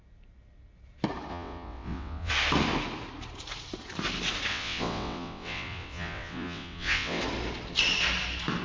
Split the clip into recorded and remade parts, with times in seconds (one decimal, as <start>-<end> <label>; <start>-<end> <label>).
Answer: 0.0-1.3 recorded; 1.3-2.3 remade; 2.3-4.5 recorded; 4.5-7.2 remade; 7.2-8.6 recorded